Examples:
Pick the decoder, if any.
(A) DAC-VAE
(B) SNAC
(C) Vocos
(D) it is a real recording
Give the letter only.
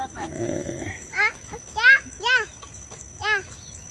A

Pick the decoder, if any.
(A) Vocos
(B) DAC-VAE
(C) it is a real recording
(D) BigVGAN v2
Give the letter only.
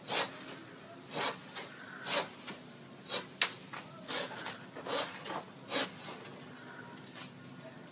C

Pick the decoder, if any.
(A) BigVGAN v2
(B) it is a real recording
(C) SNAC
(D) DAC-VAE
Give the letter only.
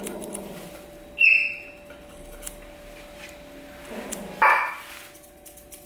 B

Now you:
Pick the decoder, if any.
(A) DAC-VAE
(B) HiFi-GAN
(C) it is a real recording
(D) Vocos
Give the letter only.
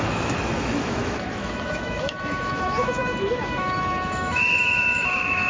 A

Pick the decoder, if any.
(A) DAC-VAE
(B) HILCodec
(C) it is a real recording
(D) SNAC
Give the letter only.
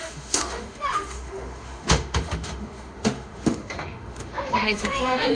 A